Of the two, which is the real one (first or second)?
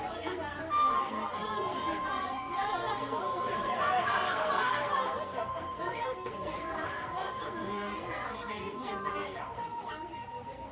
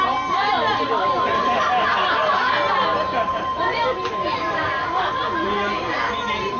second